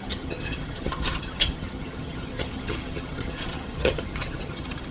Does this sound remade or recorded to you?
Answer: remade